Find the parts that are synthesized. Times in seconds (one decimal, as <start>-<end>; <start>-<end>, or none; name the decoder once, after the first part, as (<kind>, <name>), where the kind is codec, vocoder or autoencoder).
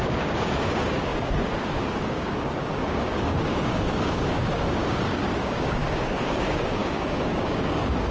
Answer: 0.0-8.1 (codec, DAC)